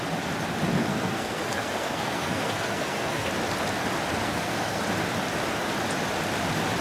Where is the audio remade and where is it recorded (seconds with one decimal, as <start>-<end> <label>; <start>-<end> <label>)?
0.0-0.8 recorded; 0.8-3.3 remade; 3.3-4.2 recorded; 4.2-4.8 remade; 4.8-6.8 recorded